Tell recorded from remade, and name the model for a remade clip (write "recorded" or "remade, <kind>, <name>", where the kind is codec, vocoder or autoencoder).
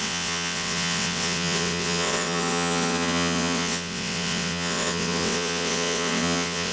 remade, vocoder, WaveNeXt